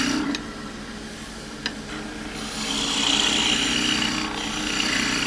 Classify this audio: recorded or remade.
recorded